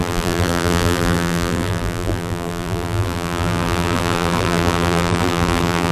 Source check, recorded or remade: remade